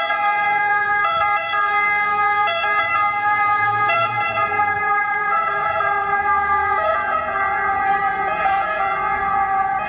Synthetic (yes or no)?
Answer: yes